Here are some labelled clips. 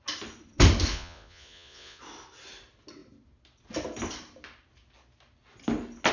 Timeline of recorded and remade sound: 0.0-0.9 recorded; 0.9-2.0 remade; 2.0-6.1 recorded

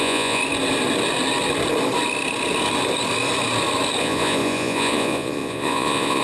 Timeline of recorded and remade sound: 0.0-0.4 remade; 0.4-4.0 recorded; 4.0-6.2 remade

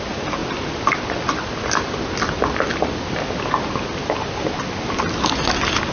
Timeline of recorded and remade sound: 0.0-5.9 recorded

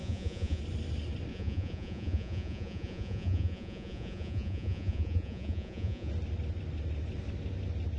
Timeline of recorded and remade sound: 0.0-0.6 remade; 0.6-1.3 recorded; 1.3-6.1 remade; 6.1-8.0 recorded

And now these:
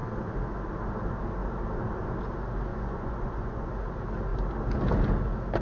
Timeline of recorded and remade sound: 0.0-2.7 recorded; 2.7-3.7 remade; 3.7-5.6 recorded

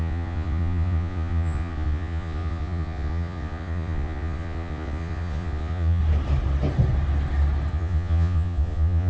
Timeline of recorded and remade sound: 0.0-6.0 remade; 6.0-7.7 recorded; 7.7-9.1 remade